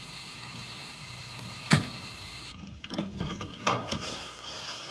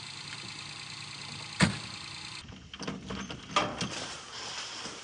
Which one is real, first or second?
second